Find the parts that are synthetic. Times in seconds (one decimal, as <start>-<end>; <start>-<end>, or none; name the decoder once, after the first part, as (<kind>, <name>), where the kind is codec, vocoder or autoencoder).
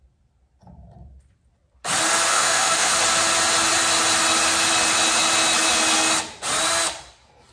2.3-3.0 (autoencoder, DAC-VAE)